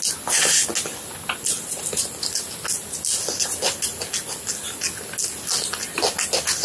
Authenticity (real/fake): real